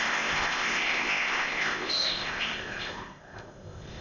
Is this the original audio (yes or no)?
no